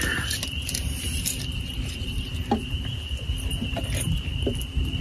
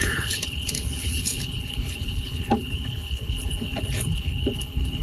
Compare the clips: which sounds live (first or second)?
first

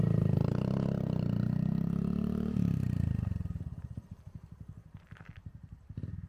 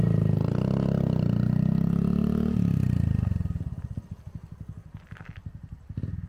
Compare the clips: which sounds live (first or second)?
second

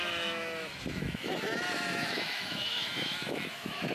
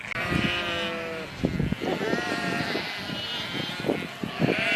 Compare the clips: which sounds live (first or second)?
second